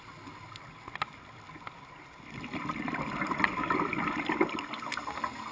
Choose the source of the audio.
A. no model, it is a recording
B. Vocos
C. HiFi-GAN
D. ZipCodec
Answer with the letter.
A